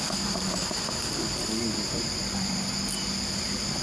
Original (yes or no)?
yes